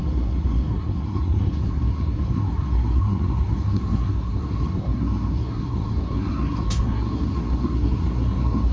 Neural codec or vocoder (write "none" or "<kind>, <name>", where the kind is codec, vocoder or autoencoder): codec, SNAC